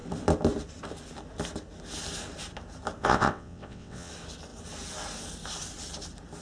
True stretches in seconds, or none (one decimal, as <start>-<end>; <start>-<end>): 0.0-3.0; 4.1-6.4